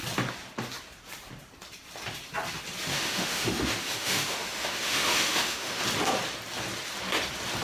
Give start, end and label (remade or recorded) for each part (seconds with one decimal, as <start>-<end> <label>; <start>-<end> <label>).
0.0-2.9 recorded; 2.9-5.8 remade; 5.8-7.6 recorded